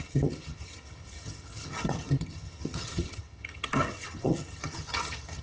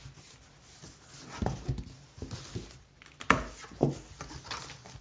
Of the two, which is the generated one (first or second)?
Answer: first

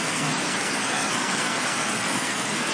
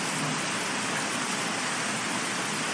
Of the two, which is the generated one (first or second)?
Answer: first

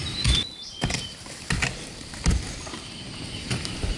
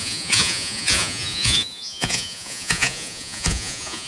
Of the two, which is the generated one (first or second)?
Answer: second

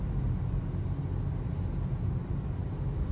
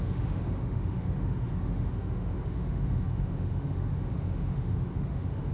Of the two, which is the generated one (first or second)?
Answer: second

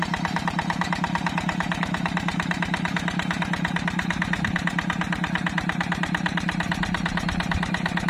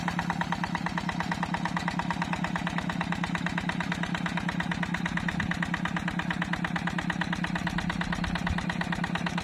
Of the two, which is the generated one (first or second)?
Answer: first